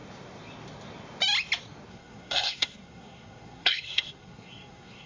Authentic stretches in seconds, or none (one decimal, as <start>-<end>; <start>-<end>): 0.0-1.9